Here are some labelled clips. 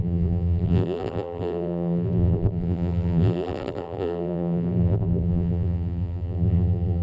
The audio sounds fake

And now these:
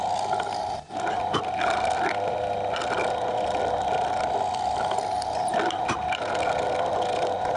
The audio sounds real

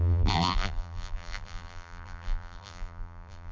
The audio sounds fake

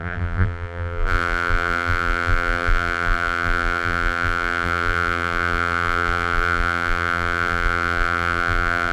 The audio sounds fake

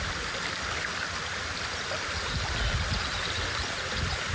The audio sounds real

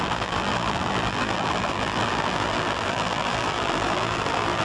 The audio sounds fake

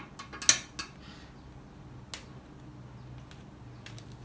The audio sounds real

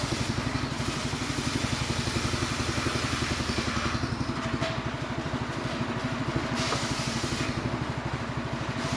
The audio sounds fake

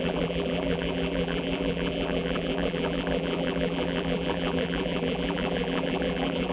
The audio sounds fake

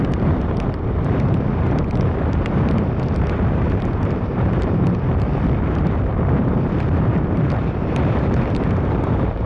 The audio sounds fake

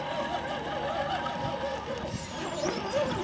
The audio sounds real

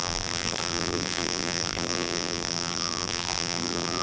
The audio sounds fake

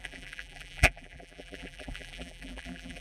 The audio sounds fake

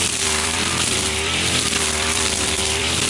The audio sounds fake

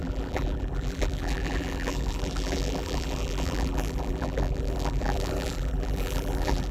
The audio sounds fake